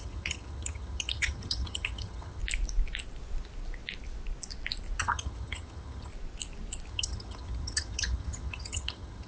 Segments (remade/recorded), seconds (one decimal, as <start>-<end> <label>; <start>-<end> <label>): 0.0-2.4 remade; 2.4-5.0 recorded; 5.0-6.1 remade; 6.1-6.9 recorded; 6.9-9.3 remade